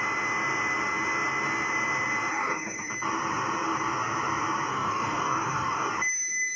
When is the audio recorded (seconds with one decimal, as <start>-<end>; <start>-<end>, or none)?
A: 0.0-2.3; 2.9-4.7; 5.9-6.6